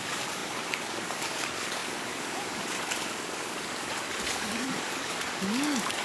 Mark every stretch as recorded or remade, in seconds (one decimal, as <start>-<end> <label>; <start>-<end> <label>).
0.0-6.0 remade